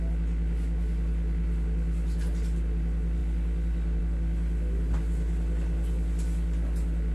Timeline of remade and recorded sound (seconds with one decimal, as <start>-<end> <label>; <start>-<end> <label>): 0.0-7.1 recorded